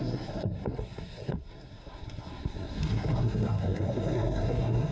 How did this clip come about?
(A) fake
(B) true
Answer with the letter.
A